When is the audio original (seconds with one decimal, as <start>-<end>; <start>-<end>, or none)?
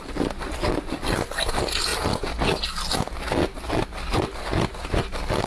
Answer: 0.0-5.5